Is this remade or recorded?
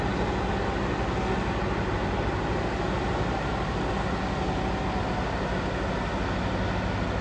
recorded